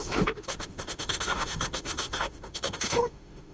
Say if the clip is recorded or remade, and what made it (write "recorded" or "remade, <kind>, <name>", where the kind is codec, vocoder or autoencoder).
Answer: remade, autoencoder, DAC-VAE